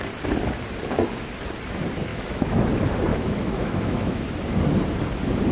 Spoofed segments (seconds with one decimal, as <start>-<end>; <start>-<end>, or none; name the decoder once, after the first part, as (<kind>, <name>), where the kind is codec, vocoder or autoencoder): 2.1-2.7 (autoencoder, DAC-VAE); 3.1-4.2